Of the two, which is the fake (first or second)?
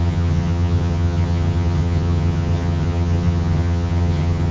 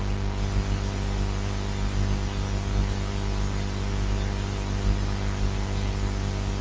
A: first